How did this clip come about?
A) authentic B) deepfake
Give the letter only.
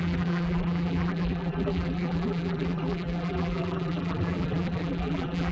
B